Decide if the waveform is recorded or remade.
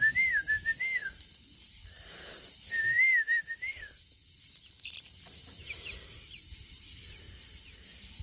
remade